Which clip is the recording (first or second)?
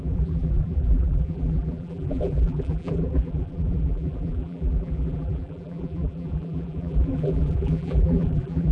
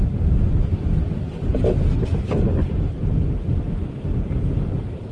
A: second